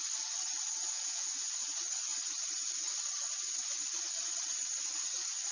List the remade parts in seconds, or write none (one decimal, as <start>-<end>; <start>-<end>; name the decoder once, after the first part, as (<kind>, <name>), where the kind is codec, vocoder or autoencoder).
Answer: 0.8-1.5 (vocoder, Vocos)